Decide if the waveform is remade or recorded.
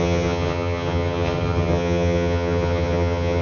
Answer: remade